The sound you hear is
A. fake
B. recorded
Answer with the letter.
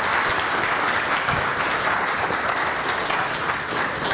B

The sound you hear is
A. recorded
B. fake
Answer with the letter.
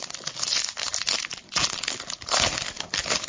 A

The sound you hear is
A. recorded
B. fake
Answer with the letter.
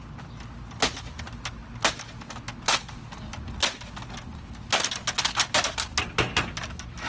A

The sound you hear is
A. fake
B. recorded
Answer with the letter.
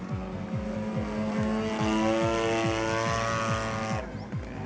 B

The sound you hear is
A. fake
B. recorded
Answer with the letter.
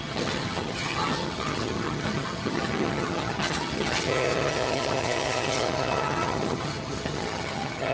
A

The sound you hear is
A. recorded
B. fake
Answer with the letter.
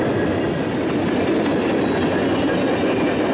A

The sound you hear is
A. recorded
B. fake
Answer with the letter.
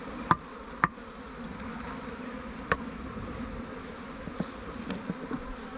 A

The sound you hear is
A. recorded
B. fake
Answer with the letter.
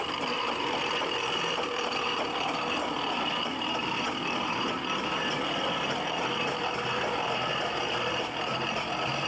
A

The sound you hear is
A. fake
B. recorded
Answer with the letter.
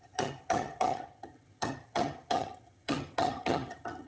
A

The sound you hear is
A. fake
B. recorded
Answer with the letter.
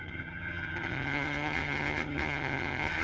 A